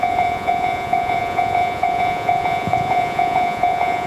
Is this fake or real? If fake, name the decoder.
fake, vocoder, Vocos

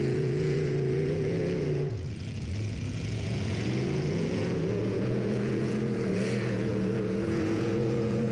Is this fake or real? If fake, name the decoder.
fake, vocoder, Vocos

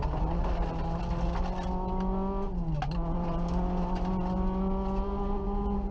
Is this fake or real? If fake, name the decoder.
real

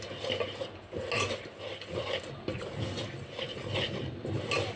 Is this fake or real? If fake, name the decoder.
real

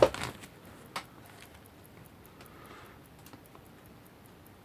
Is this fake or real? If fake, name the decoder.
real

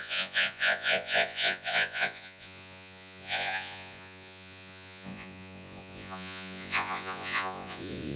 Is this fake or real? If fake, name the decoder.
fake, vocoder, Vocos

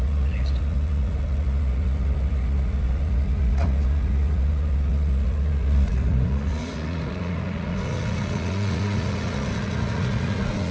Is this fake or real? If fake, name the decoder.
fake, vocoder, Vocos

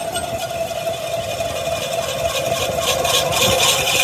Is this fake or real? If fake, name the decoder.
real